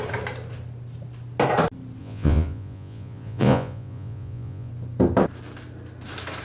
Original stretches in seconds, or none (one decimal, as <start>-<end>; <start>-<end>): 0.0-2.0; 4.7-6.4